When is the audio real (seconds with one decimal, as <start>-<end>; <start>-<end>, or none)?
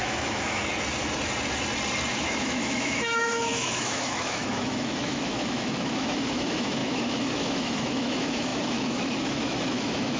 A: 0.6-2.1